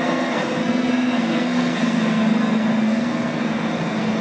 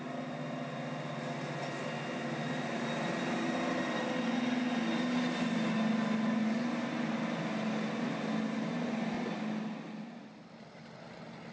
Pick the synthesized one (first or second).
first